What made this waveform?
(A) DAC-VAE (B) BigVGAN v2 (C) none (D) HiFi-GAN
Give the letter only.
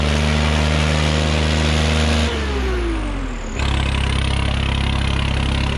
C